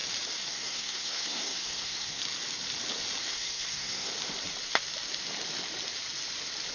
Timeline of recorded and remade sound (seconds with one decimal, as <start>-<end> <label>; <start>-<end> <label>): 0.0-0.5 recorded; 0.5-2.2 remade; 2.2-3.2 recorded; 3.2-4.1 remade; 4.1-6.7 recorded